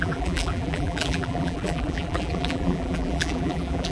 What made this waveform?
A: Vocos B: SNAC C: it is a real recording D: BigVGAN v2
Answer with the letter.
D